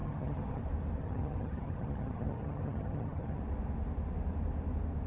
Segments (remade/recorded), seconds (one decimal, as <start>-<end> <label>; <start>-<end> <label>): 0.0-0.6 remade; 0.6-1.0 recorded; 1.0-3.4 remade; 3.4-5.1 recorded